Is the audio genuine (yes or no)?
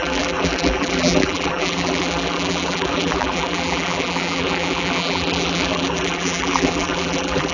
no